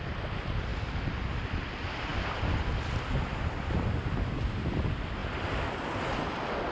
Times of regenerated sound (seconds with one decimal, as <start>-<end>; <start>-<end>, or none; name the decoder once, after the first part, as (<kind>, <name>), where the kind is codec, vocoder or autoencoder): none